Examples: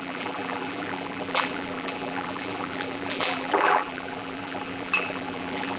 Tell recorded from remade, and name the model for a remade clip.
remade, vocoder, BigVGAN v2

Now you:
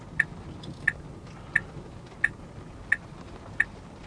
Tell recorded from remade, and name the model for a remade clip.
recorded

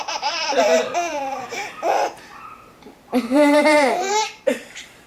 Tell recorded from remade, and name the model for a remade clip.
remade, vocoder, BigVGAN v2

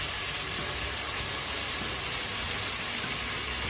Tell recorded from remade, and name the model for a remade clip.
recorded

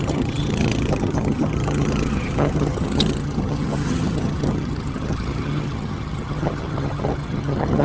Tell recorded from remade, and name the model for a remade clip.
remade, vocoder, HiFi-GAN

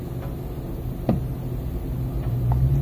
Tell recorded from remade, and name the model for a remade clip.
recorded